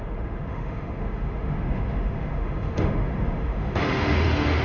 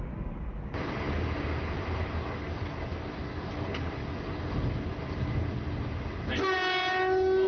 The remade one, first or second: first